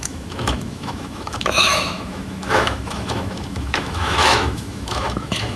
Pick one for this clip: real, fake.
fake